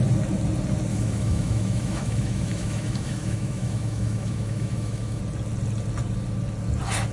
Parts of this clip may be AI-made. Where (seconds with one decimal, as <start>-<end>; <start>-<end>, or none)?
0.9-5.2